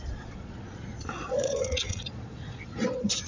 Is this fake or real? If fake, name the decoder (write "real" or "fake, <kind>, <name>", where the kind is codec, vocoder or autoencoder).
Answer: fake, vocoder, Vocos